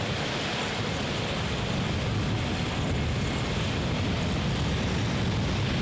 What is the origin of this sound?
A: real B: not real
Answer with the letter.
A